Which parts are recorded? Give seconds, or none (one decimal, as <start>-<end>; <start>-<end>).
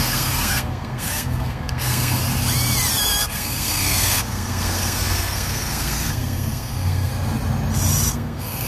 2.2-3.2; 7.1-8.1